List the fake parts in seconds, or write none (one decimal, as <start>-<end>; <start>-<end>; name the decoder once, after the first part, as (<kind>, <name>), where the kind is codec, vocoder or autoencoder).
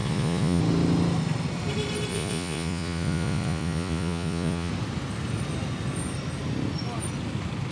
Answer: 0.0-0.6 (vocoder, Vocos); 2.1-4.7